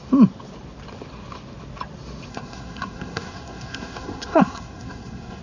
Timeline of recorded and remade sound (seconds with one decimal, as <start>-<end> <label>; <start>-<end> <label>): 0.0-2.3 recorded; 2.3-5.4 remade